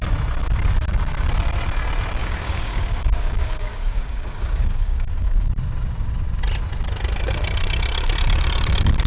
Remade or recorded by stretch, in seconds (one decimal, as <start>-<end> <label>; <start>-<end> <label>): 0.0-2.2 recorded; 2.2-5.5 remade; 5.5-9.1 recorded